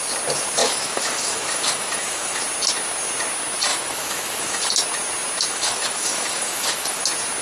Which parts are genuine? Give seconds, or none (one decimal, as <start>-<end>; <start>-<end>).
0.0-0.6; 2.4-3.7; 4.6-5.5; 7.0-7.4